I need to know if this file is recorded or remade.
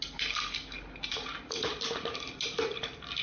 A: recorded